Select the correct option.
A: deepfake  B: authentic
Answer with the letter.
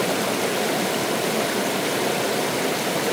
B